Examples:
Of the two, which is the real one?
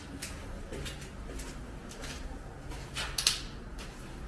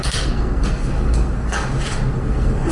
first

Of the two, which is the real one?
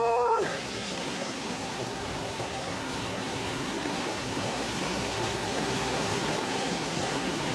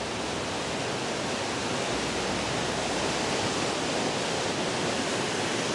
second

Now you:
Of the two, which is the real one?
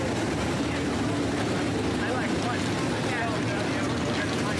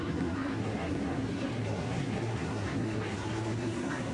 first